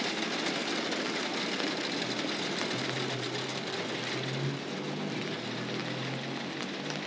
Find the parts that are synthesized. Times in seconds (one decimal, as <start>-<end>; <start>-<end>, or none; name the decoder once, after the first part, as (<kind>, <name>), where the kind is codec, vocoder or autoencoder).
none